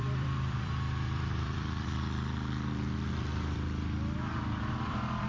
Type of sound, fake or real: fake